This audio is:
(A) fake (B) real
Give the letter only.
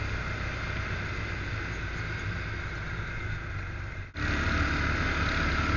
B